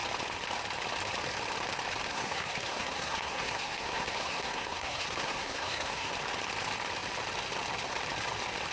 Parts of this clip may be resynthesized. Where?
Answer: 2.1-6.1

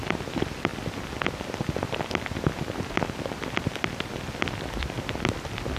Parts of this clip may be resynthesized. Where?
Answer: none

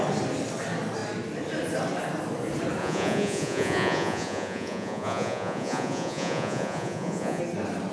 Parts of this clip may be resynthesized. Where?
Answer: 2.8-7.4